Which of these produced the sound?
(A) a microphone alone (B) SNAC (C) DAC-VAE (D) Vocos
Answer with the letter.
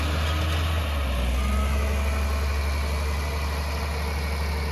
A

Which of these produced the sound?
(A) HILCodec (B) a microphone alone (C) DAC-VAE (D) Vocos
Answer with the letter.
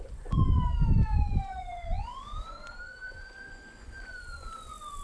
D